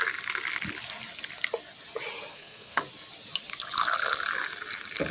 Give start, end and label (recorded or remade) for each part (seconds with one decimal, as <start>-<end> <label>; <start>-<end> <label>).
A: 0.0-2.3 recorded; 2.3-2.8 remade; 2.8-5.1 recorded